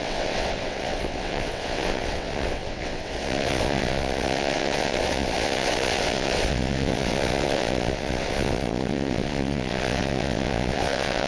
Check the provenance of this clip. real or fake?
fake